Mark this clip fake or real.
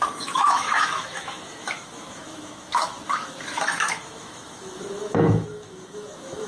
fake